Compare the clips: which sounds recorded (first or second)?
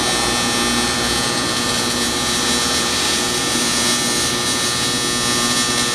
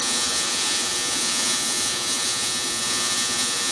first